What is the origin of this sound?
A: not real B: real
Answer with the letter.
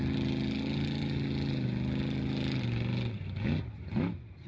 B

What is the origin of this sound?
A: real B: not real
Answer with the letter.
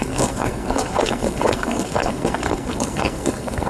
B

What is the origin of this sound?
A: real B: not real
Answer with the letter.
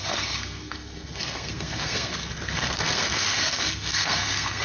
B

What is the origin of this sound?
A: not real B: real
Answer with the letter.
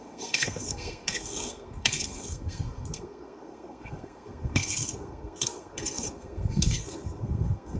A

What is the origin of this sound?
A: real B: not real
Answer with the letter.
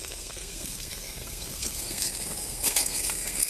B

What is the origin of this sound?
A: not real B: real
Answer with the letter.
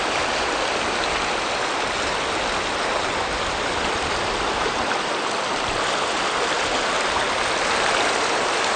B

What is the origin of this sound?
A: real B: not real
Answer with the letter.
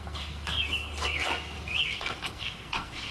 B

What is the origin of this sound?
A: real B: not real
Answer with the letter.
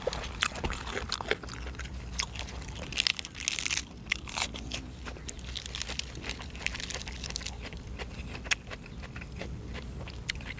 A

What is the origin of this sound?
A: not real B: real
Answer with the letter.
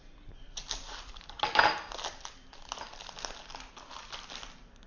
B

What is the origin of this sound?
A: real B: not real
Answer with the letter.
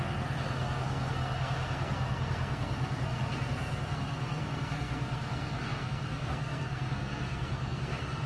B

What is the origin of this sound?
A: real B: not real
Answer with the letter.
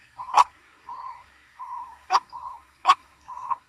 B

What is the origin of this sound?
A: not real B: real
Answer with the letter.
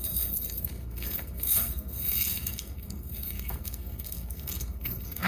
A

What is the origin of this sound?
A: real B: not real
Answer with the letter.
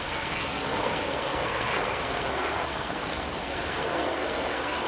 B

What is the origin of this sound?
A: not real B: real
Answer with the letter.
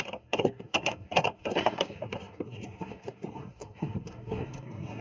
A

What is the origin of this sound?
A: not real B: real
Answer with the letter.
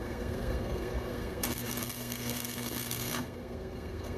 A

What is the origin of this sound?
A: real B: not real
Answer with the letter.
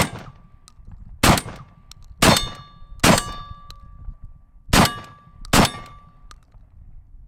A